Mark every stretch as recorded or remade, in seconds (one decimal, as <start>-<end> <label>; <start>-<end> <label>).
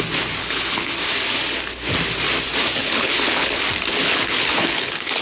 0.0-0.4 recorded; 0.4-0.9 remade; 0.9-2.8 recorded; 2.8-3.6 remade; 3.6-4.0 recorded; 4.0-5.2 remade